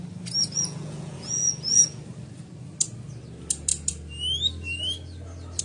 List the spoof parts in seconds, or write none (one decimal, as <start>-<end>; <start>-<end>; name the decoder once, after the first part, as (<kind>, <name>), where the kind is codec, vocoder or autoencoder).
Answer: 0.4-2.0 (vocoder, Vocos)